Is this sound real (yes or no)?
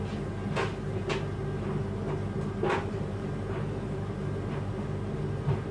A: yes